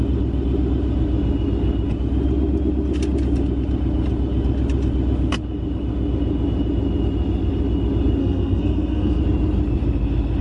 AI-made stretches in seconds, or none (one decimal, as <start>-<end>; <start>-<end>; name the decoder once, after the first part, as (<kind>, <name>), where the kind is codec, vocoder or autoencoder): 8.2-9.2 (codec, SNAC)